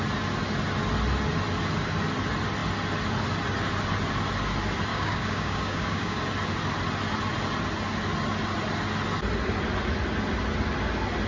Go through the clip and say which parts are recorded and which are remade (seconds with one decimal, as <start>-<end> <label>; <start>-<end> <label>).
0.0-4.9 recorded; 4.9-6.2 remade; 6.2-11.3 recorded